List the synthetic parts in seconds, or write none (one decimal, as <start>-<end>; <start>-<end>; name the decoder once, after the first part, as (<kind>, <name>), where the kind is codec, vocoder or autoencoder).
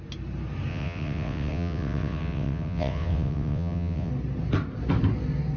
0.7-4.1 (vocoder, WaveNeXt)